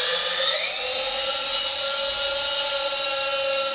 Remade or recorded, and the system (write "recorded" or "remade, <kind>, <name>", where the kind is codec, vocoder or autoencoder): recorded